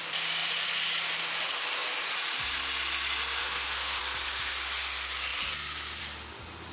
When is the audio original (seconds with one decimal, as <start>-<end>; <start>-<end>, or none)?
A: 0.0-3.4; 4.0-6.7